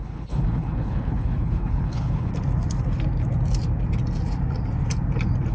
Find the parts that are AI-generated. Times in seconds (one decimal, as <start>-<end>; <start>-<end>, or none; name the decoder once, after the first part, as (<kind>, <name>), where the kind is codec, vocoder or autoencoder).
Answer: 0.0-2.3 (codec, HILCodec)